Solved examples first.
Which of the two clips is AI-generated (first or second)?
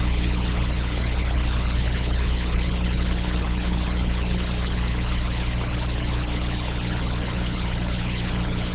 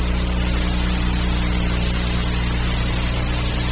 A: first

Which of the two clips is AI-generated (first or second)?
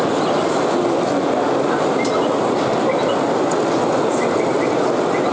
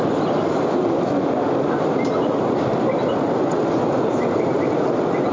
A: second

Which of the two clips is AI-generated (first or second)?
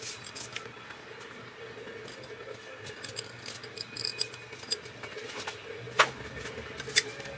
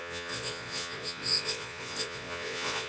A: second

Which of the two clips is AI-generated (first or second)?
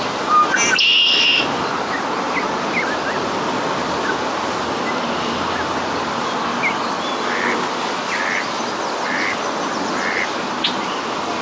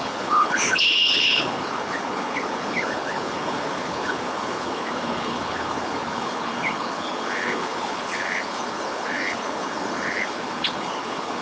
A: second